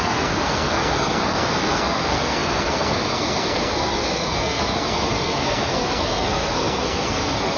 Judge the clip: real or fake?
fake